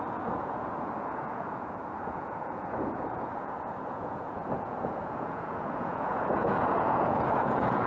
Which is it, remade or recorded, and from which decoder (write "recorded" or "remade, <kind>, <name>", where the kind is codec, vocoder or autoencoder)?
remade, vocoder, Vocos